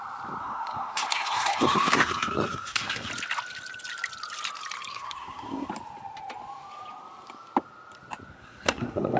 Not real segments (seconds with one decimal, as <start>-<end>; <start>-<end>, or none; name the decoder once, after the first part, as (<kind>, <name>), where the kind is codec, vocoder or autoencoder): 0.4-3.1 (codec, SNAC); 4.9-5.7; 8.3-9.2